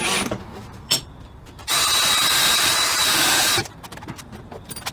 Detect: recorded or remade remade